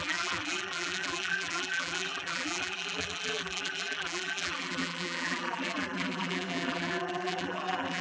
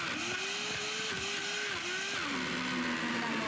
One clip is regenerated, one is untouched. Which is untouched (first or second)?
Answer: second